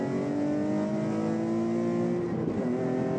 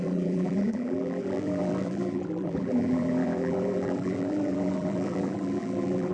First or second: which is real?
first